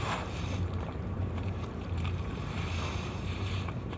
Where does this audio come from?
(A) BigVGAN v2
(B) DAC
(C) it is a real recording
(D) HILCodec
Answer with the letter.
A